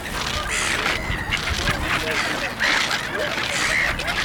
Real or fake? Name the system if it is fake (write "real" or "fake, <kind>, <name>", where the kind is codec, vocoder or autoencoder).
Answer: real